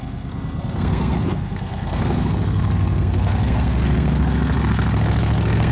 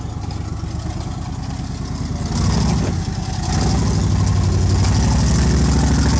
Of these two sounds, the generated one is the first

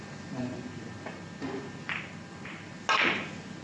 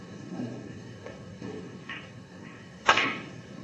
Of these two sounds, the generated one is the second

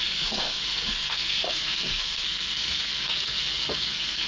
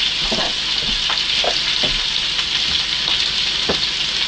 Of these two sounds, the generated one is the first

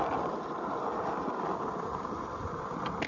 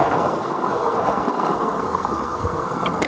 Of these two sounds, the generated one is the second